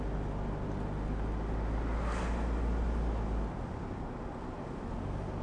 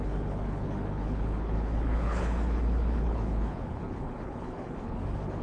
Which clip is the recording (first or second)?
first